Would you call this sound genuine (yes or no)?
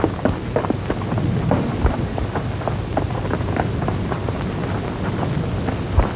yes